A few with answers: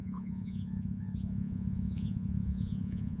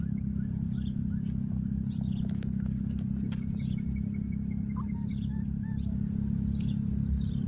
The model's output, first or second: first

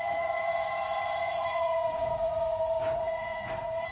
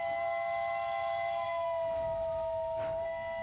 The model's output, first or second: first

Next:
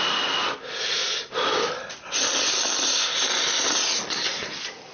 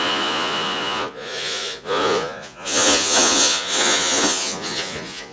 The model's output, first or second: second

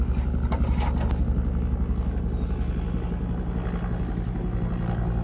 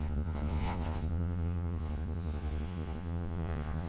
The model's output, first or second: second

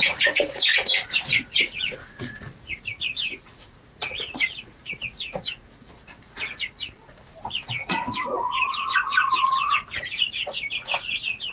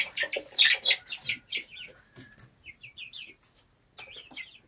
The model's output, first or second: first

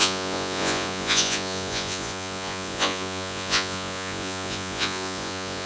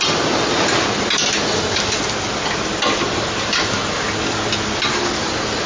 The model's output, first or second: first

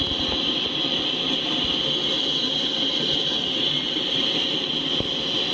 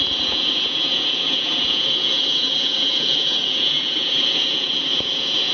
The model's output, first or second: second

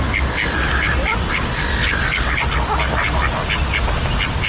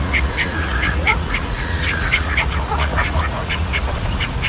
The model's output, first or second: second